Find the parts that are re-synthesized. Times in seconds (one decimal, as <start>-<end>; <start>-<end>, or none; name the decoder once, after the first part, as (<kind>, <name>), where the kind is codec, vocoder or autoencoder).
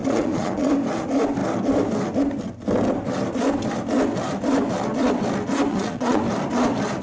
0.0-0.7 (vocoder, Vocos); 5.7-6.2